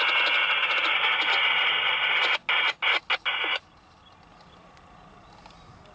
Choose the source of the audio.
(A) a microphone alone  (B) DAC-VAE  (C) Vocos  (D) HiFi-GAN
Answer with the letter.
A